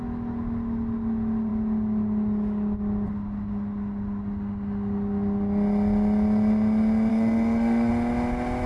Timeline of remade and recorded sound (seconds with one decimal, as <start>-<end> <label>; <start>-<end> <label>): 0.0-7.1 recorded; 7.1-7.9 remade; 7.9-8.7 recorded